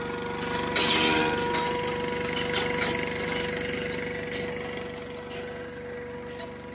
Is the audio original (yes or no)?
yes